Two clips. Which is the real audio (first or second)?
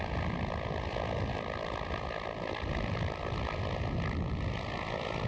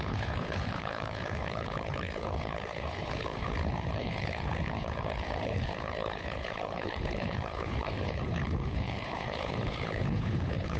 first